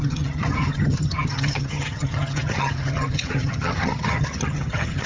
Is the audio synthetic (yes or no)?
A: yes